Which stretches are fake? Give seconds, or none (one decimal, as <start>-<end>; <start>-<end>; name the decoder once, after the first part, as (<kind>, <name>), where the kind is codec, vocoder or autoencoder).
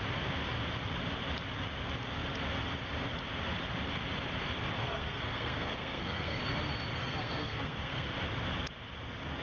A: 4.8-6.4 (codec, SNAC); 7.0-8.1